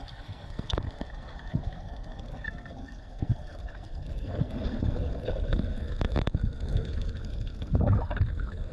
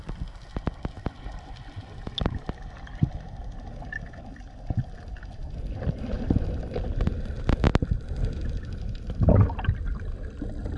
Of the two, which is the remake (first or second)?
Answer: first